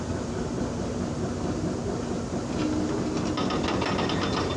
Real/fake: real